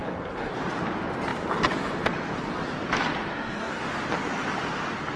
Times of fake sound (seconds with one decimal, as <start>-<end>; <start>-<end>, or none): 0.0-0.5; 3.3-3.9